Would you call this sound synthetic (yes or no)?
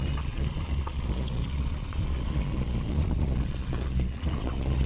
yes